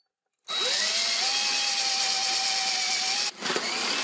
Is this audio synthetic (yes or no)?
no